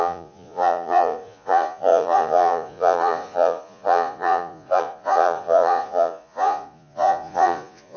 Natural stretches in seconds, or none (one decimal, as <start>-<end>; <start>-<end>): none